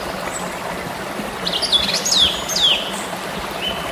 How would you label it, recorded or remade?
recorded